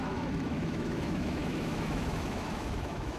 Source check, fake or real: fake